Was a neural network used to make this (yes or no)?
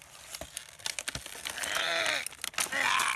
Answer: no